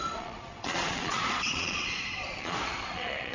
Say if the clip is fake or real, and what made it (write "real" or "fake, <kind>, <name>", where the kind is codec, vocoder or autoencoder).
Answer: fake, vocoder, Vocos